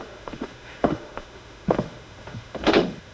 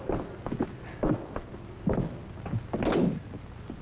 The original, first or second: second